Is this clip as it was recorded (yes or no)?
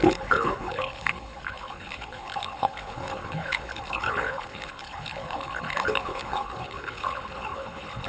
no